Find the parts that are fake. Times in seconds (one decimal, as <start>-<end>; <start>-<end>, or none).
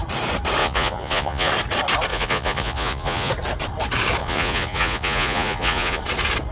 0.6-1.5; 2.1-3.3; 4.2-6.0